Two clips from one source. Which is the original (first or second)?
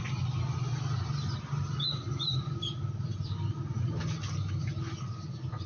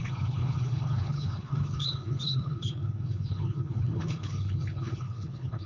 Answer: first